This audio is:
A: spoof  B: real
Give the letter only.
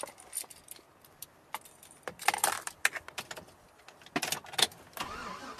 B